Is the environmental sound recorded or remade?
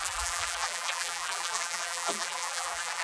remade